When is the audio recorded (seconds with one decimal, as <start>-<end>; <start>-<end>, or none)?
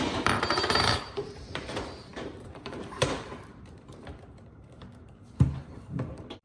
none